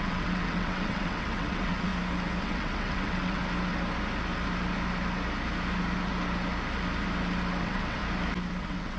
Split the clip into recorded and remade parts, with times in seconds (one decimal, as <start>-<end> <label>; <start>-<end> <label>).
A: 0.0-1.9 remade; 1.9-2.4 recorded; 2.4-3.4 remade; 3.4-7.6 recorded; 7.6-8.0 remade; 8.0-8.6 recorded; 8.6-9.0 remade